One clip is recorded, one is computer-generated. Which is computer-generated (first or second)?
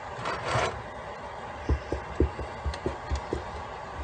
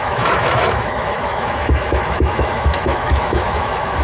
second